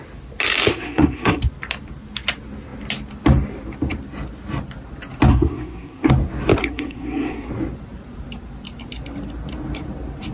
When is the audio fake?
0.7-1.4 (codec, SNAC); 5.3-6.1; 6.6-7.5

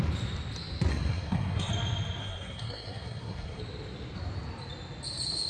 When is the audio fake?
0.9-1.7 (codec, SNAC); 2.2-3.6

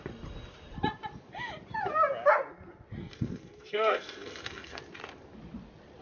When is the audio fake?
3.0-4.8 (codec, SNAC)

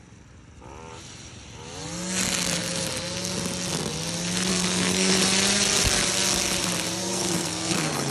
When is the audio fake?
4.5-5.1 (codec, SNAC); 7.0-8.1

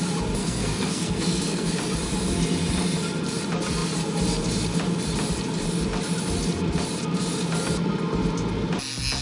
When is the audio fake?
0.4-1.7 (codec, SNAC)

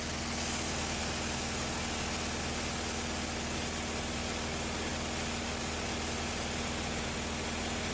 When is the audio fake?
none

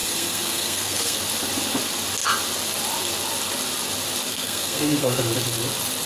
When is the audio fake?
0.0-1.2 (codec, SNAC); 4.3-5.2